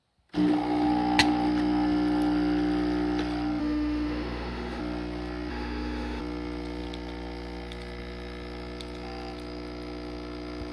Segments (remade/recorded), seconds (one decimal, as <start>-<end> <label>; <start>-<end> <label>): 0.0-3.6 recorded; 3.6-4.8 remade; 4.8-5.5 recorded; 5.5-6.2 remade; 6.2-10.7 recorded